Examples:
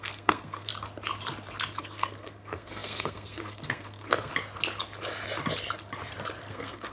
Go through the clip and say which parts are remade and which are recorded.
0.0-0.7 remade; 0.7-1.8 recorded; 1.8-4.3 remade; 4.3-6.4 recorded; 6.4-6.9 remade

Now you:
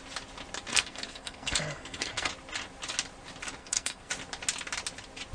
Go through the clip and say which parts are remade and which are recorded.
0.0-0.7 recorded; 0.7-2.3 remade; 2.3-3.6 recorded; 3.6-4.1 remade; 4.1-5.3 recorded